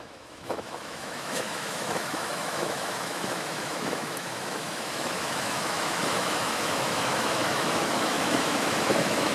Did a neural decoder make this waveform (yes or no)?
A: yes